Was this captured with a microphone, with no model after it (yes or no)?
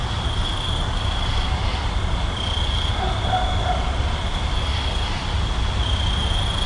yes